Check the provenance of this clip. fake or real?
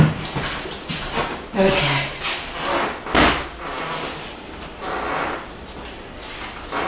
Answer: real